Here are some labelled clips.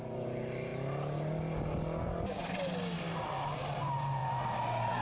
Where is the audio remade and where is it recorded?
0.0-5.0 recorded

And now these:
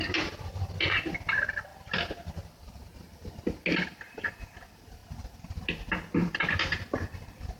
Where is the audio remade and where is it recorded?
0.0-1.7 recorded; 1.7-2.2 remade; 2.2-7.6 recorded

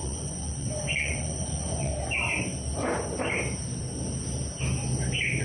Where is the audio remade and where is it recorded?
0.0-1.9 remade; 1.9-5.4 recorded

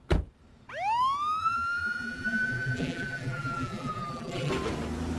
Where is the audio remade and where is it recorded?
0.0-1.4 recorded; 1.4-4.5 remade; 4.5-5.2 recorded

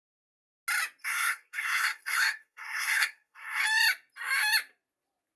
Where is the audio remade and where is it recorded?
0.0-1.0 recorded; 1.0-3.6 remade; 3.6-5.4 recorded

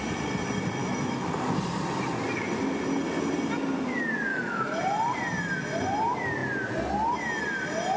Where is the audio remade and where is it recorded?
0.0-0.8 recorded; 0.8-1.3 remade; 1.3-4.3 recorded; 4.3-4.8 remade; 4.8-8.0 recorded

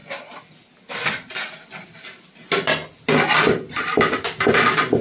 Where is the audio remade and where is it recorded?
0.0-5.0 recorded